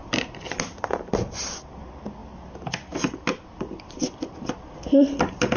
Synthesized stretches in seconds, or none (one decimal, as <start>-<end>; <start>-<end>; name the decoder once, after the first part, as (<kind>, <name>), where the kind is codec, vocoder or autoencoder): none